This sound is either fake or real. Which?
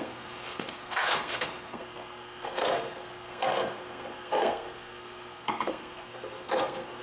fake